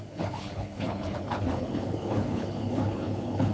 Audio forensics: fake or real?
fake